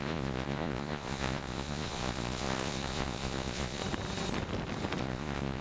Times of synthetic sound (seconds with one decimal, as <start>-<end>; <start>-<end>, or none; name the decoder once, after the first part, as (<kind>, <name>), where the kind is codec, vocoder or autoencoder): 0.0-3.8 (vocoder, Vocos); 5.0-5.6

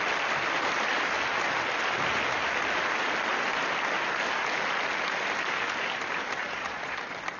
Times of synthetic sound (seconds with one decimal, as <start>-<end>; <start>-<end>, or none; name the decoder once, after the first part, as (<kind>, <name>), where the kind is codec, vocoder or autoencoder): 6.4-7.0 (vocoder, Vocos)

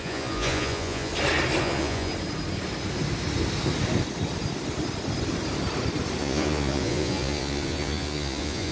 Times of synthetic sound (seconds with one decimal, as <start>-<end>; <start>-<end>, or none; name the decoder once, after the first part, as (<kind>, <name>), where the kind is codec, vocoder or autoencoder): 0.0-1.1 (vocoder, Vocos); 1.6-2.1; 6.2-8.7